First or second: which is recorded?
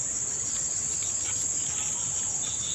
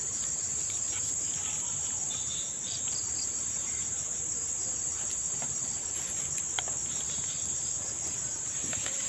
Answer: first